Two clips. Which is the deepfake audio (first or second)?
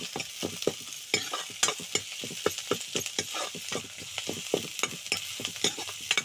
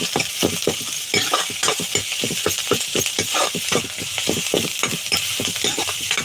second